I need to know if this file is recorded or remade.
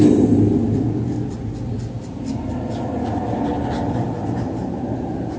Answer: recorded